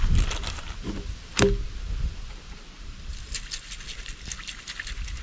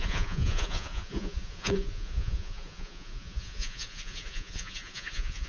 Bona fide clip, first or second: first